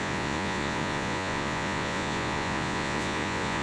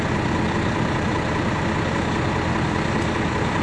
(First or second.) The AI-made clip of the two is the first